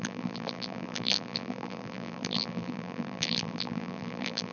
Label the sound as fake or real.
fake